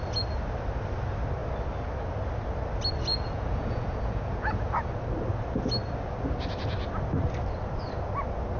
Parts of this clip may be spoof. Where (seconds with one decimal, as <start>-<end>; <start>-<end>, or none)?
3.1-4.9